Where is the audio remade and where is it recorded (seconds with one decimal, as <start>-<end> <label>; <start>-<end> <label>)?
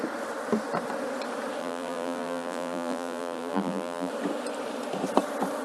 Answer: 0.0-1.6 recorded; 1.6-4.1 remade; 4.1-5.6 recorded